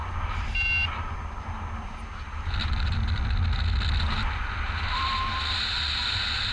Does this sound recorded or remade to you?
recorded